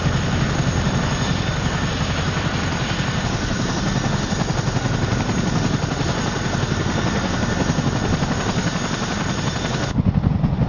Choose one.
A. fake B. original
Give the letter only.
B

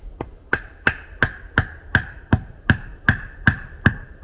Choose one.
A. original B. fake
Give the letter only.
A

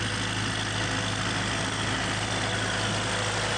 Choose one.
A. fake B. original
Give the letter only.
B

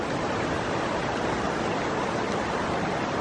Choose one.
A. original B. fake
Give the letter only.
A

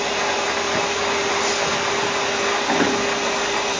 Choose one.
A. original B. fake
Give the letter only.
A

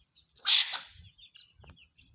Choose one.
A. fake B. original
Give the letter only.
B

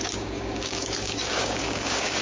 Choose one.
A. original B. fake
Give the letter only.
B